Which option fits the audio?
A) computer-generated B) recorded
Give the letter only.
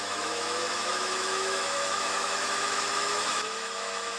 A